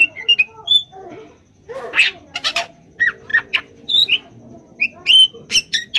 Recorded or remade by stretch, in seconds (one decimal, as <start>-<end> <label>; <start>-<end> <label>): 0.0-6.0 recorded